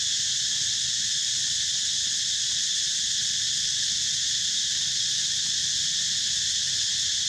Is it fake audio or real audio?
real